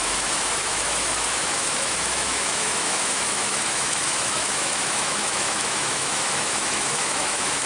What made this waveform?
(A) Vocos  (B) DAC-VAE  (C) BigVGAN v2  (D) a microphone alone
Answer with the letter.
B